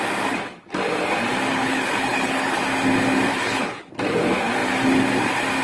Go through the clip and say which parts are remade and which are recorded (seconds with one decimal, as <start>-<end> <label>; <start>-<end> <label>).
0.0-1.5 recorded; 1.5-2.6 remade; 2.6-3.3 recorded; 3.3-3.9 remade; 3.9-5.6 recorded